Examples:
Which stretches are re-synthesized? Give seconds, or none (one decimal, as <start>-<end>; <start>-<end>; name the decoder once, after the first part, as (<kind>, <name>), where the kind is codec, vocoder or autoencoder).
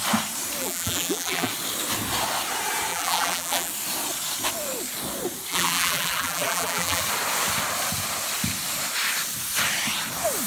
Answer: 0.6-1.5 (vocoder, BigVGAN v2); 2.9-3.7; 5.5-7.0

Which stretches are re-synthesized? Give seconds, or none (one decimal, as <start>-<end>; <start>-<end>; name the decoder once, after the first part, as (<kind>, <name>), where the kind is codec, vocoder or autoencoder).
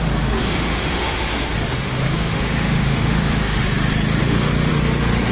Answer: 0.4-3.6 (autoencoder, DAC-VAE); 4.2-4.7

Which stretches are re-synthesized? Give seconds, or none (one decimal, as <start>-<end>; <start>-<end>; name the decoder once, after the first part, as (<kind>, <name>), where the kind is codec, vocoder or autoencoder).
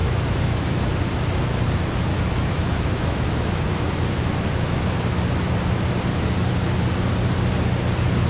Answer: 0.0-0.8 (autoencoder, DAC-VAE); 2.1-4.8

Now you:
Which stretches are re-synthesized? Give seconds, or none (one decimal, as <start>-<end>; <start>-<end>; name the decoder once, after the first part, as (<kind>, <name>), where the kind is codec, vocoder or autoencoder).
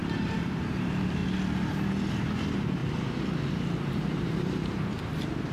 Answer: 0.0-1.2 (vocoder, BigVGAN v2); 2.1-2.8; 3.9-5.5